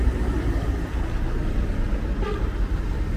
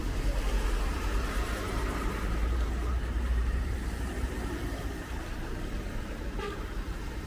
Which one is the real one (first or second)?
first